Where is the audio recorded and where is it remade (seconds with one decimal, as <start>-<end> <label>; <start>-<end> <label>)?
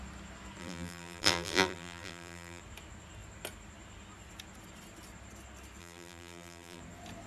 0.0-0.6 recorded; 0.6-2.6 remade; 2.6-5.8 recorded; 5.8-6.8 remade; 6.8-7.3 recorded